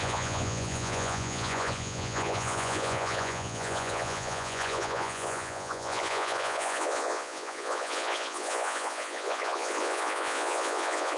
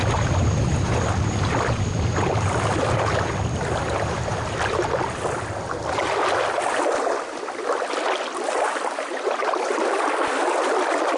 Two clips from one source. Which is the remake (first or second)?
first